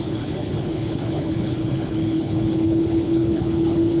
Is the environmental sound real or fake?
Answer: fake